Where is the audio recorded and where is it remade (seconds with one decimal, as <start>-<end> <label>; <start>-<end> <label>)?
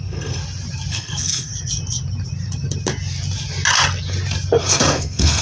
0.0-0.4 remade; 0.4-0.9 recorded; 0.9-1.5 remade; 1.5-4.6 recorded; 4.6-5.4 remade